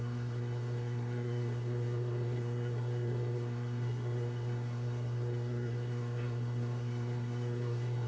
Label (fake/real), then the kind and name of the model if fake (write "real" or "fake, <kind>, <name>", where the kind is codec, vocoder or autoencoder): fake, codec, SNAC